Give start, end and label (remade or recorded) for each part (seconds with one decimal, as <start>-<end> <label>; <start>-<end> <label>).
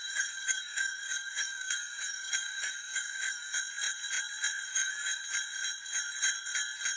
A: 0.0-3.6 remade; 3.6-4.7 recorded; 4.7-5.2 remade; 5.2-7.0 recorded